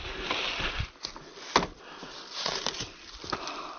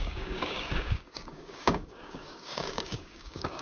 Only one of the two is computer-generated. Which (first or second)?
second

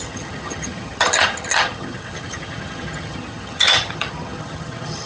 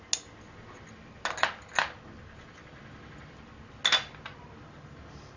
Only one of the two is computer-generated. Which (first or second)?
first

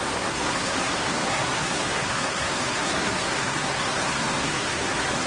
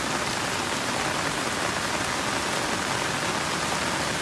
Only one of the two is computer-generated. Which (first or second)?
first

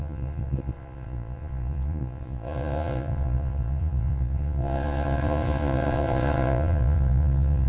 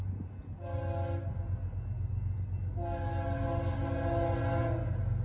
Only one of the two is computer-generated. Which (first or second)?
first